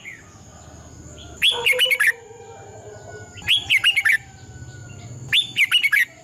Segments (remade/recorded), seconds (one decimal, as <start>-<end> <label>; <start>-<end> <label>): 0.0-6.2 recorded